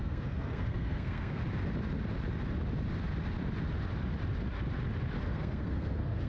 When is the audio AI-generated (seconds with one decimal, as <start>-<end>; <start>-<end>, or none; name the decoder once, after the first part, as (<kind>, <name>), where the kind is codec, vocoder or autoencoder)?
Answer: 0.0-1.4 (codec, SNAC); 5.2-6.3